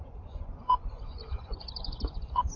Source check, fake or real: fake